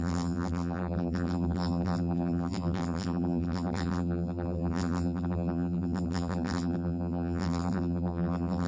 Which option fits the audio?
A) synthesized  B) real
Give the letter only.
A